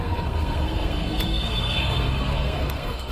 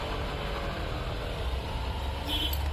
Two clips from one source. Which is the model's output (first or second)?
first